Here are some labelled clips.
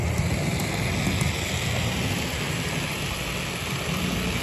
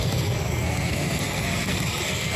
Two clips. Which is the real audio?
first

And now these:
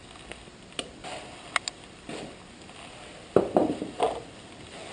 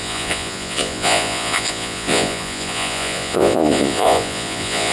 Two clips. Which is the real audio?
first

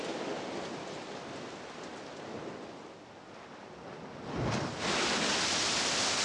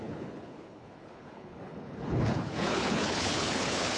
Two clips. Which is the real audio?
first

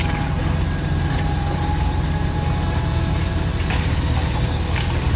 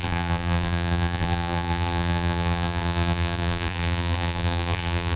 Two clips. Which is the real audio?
first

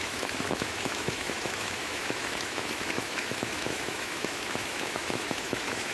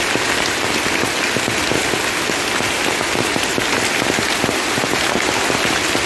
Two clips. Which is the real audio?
second